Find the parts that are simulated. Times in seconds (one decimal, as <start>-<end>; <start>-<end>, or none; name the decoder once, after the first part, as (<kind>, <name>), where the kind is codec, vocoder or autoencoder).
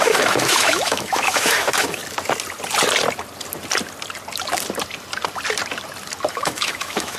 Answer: 0.0-2.0 (autoencoder, DAC-VAE); 6.3-7.2